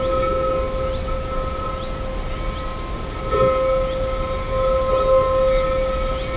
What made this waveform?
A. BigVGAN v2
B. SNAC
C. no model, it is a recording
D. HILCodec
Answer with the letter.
C